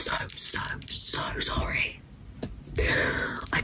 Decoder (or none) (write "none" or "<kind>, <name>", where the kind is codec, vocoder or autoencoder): none